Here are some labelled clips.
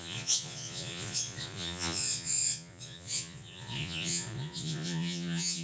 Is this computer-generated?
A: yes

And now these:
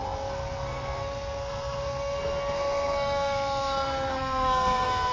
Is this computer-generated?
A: yes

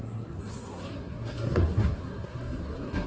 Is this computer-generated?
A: yes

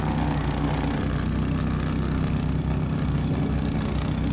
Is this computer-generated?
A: no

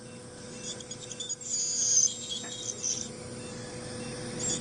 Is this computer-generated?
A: no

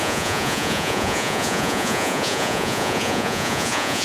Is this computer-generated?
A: yes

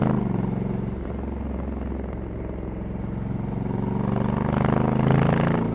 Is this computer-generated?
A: no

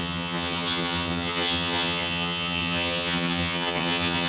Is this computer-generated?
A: yes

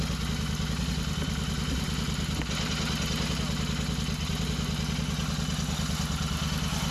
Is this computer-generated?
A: no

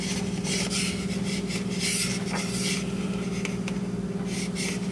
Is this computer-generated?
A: no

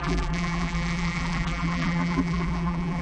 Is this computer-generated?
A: yes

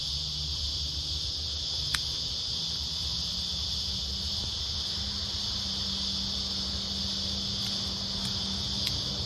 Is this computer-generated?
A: no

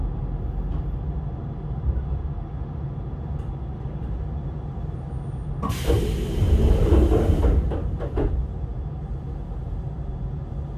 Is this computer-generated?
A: no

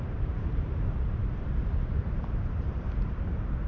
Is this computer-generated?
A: no